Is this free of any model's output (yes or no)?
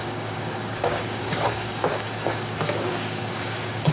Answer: no